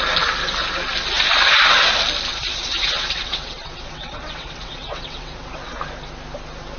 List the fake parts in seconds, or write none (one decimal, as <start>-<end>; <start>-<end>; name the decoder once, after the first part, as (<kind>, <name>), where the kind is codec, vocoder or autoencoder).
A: 2.3-5.7 (vocoder, WaveNeXt)